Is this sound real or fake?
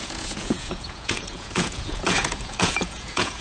fake